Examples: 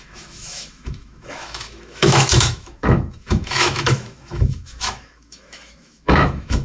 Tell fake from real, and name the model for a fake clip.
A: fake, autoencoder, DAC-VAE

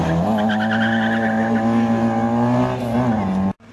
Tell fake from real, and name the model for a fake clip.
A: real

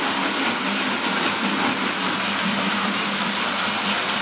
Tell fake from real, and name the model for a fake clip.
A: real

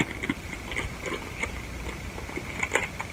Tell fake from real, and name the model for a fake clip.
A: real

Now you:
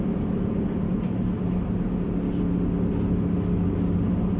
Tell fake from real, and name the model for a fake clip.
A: real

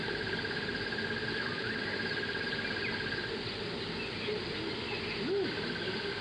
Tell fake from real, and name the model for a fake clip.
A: real